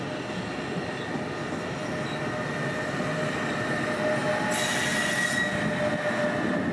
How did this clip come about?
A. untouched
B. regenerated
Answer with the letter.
A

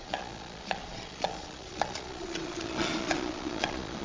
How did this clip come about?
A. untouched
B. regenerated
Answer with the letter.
B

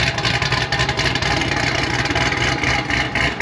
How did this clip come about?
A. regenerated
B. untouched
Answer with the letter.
B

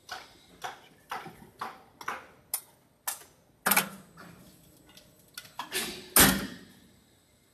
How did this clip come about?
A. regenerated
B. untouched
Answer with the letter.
B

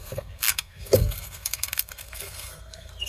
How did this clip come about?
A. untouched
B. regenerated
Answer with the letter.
B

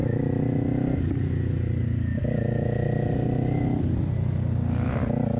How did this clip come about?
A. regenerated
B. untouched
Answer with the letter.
B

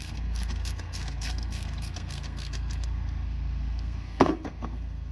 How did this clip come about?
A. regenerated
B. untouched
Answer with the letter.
A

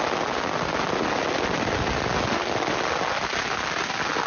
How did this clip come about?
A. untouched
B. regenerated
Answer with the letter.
A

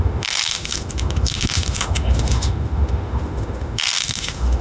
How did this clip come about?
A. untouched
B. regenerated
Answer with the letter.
B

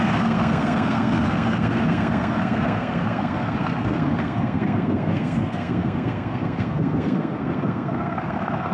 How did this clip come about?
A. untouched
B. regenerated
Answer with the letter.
B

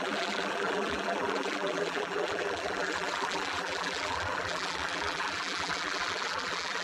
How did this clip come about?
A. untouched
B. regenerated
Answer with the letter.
B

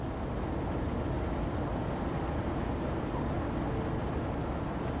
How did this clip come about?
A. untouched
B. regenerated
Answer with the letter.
A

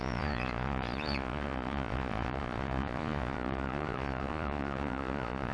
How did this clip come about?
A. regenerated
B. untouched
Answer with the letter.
A